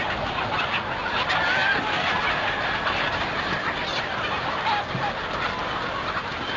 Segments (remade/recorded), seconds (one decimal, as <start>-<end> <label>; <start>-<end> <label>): 0.0-1.6 recorded; 1.6-4.6 remade; 4.6-6.6 recorded